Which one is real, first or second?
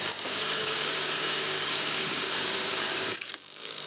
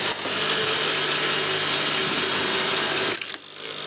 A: second